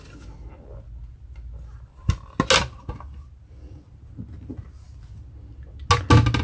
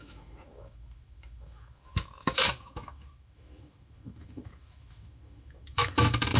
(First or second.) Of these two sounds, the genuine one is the first